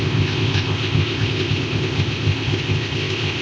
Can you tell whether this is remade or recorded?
remade